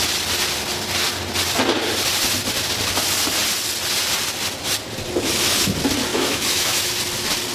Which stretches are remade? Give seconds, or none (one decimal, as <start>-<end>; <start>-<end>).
6.1-6.9